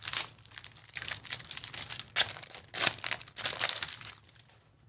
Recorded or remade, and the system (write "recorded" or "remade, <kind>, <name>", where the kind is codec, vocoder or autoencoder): recorded